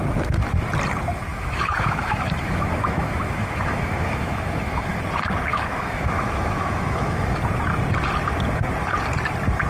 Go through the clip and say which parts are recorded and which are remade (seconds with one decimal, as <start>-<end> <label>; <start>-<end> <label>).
0.0-1.3 recorded; 1.3-5.0 remade; 5.0-5.5 recorded; 5.5-7.4 remade; 7.4-9.7 recorded